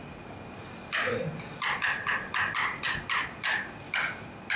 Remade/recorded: recorded